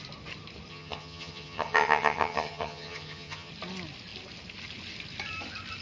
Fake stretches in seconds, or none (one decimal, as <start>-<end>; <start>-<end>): 0.7-3.5